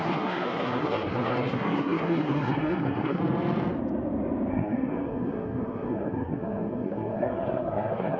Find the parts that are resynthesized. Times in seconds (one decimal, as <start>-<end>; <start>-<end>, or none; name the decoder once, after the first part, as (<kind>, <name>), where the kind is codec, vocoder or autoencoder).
0.0-3.2 (codec, SNAC); 4.5-8.2